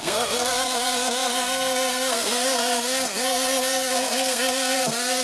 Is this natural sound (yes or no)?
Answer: no